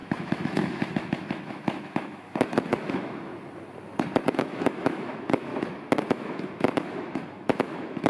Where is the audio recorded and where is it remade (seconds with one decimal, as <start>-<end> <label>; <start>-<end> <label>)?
0.0-3.3 remade; 3.3-4.3 recorded; 4.3-5.5 remade; 5.5-6.1 recorded; 6.1-8.1 remade